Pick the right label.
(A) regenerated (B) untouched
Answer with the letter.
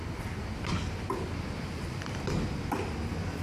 B